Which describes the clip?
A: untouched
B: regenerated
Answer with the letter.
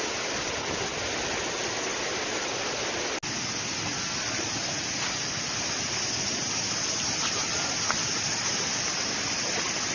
A